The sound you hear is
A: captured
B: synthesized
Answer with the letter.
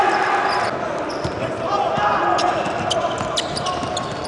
A